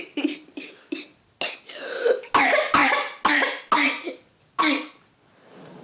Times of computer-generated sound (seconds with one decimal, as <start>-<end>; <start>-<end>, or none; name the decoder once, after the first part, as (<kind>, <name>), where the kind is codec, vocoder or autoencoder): none